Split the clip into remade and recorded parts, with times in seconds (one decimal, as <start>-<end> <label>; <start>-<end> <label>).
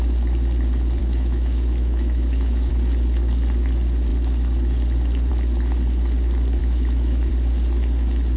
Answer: 0.0-1.0 recorded; 1.0-2.7 remade; 2.7-6.6 recorded; 6.6-7.3 remade; 7.3-8.4 recorded